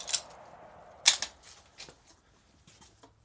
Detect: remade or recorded recorded